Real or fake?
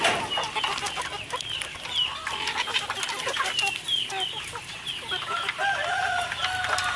real